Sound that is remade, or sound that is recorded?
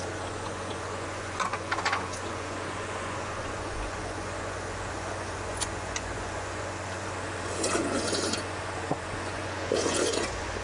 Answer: remade